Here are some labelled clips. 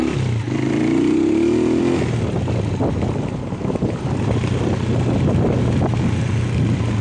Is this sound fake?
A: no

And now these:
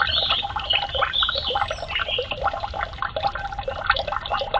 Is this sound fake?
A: no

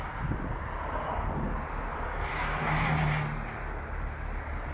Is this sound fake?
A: no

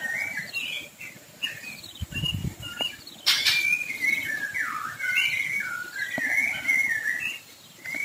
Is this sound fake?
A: no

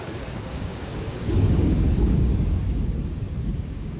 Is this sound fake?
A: yes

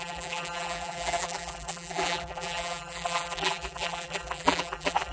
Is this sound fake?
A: yes